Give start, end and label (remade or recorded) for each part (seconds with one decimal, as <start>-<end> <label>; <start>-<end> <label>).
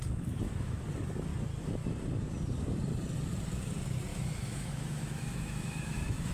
0.0-0.8 remade; 0.8-4.1 recorded; 4.1-6.3 remade